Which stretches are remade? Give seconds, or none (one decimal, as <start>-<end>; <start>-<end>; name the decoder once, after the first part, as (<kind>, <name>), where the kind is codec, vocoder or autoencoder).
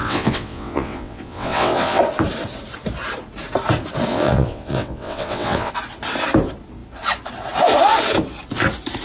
0.0-2.0 (vocoder, WaveNeXt); 4.1-5.7